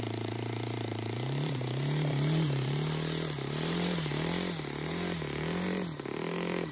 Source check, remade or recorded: remade